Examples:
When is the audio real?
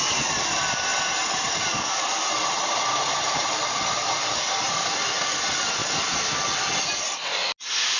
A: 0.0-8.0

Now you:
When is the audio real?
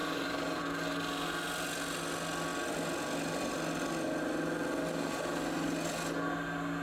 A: 0.6-6.8